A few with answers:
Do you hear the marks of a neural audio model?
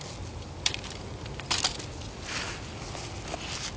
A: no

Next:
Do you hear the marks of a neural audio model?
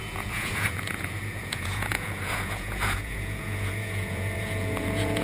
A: yes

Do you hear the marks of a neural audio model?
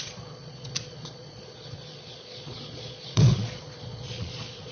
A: yes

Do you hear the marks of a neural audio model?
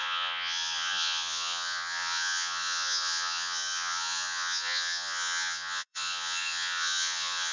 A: yes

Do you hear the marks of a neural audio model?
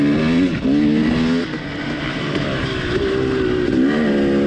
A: no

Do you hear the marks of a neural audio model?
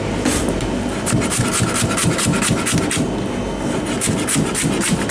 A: no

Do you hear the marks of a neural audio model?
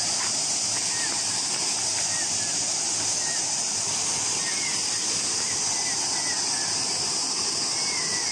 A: no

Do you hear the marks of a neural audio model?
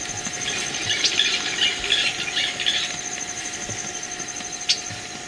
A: no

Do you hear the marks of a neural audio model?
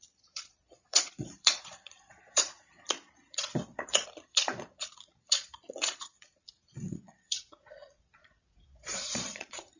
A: yes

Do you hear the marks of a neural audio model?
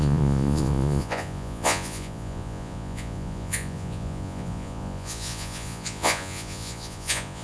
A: yes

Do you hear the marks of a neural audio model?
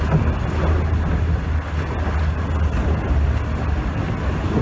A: no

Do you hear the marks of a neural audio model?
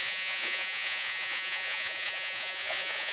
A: yes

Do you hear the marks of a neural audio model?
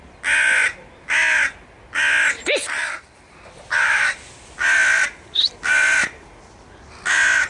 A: no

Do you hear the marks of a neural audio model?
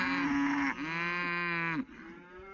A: no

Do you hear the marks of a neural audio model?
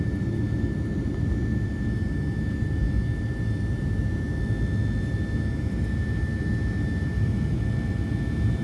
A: no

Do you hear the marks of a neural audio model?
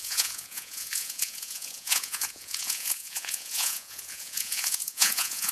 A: yes